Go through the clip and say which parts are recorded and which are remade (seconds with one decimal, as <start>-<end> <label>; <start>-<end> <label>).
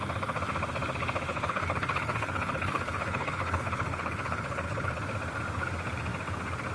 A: 0.0-1.3 recorded; 1.3-5.0 remade; 5.0-6.7 recorded